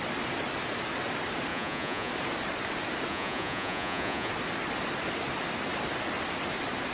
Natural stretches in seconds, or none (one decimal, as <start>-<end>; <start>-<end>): 0.0-1.5; 2.1-3.1; 4.3-6.9